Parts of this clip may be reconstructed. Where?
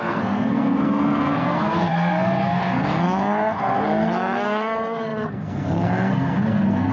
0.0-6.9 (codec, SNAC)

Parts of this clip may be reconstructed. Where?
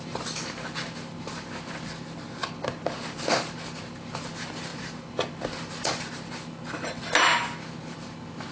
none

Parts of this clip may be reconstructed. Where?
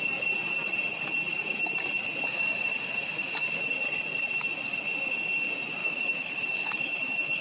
5.8-7.4 (autoencoder, DAC-VAE)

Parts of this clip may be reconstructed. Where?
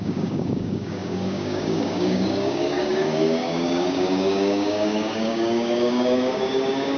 0.0-7.0 (codec, DAC)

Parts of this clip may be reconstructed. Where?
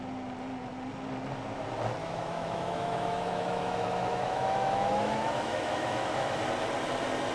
2.0-6.4 (autoencoder, DAC-VAE)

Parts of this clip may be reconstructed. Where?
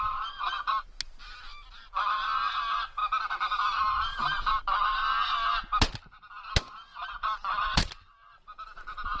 6.9-8.4 (vocoder, BigVGAN v2)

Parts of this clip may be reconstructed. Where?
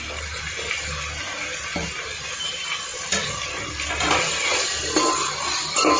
none